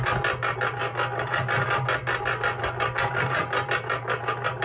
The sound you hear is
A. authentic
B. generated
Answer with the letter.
A